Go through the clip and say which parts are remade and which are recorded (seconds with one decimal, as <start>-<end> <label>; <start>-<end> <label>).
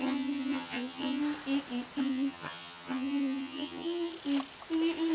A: 0.0-1.2 remade; 1.2-2.0 recorded; 2.0-4.1 remade; 4.1-5.1 recorded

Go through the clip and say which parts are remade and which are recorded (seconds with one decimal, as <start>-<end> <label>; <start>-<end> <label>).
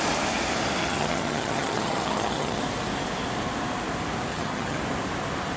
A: 0.0-0.8 recorded; 0.8-2.6 remade; 2.6-4.3 recorded; 4.3-4.8 remade; 4.8-5.6 recorded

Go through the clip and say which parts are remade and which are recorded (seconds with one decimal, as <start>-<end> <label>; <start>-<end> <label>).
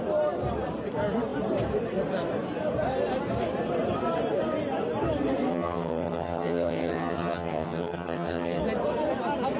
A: 0.0-5.5 recorded; 5.5-8.6 remade; 8.6-9.6 recorded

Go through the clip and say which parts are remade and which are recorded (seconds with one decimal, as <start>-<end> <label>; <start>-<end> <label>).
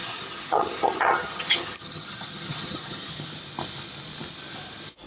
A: 0.0-3.1 remade; 3.1-5.1 recorded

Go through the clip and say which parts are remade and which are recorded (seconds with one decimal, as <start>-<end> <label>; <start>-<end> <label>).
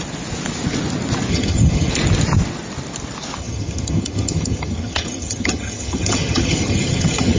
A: 0.0-1.3 recorded; 1.3-1.9 remade; 1.9-3.4 recorded; 3.4-7.4 remade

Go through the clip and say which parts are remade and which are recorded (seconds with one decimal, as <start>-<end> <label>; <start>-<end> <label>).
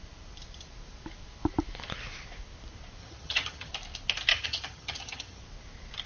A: 0.0-3.0 recorded; 3.0-3.7 remade; 3.7-4.3 recorded; 4.3-5.4 remade; 5.4-6.1 recorded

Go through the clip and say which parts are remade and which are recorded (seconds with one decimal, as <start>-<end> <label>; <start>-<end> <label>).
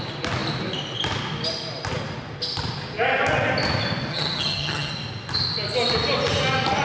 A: 0.0-4.1 recorded; 4.1-4.9 remade; 4.9-6.8 recorded